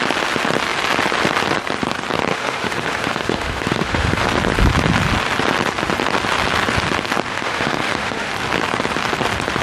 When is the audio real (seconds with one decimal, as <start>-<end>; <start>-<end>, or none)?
0.0-2.3; 4.2-7.3; 8.3-9.6